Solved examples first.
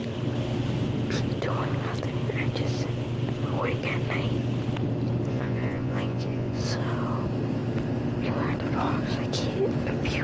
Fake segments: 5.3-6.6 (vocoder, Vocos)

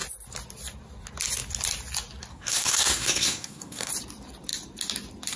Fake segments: 2.3-3.9 (codec, SNAC)

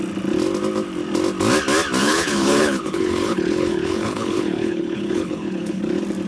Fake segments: 2.0-5.8 (codec, HILCodec)

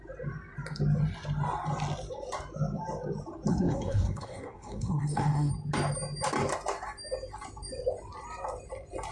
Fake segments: 3.5-5.5 (codec, SNAC)

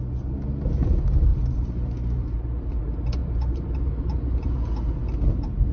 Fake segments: 1.3-2.7 (vocoder, BigVGAN v2); 3.2-4.7